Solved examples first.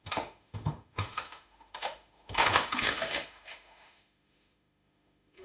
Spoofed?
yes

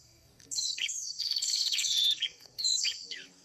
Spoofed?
yes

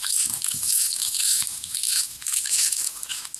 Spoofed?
yes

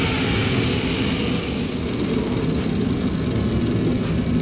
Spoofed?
no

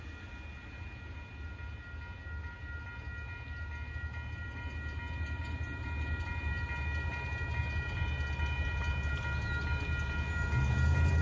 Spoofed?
no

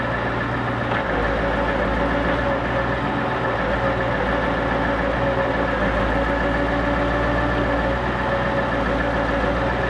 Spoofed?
no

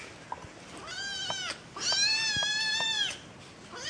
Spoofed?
no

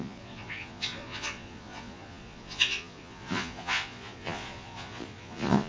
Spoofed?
yes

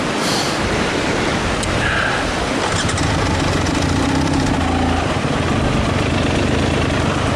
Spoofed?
yes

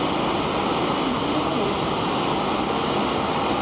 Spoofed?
no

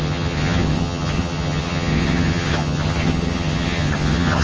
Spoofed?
yes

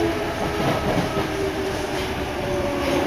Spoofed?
yes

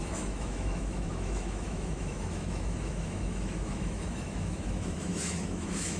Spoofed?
yes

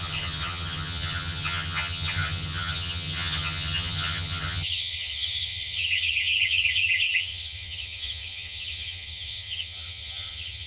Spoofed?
yes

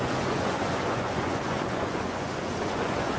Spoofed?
yes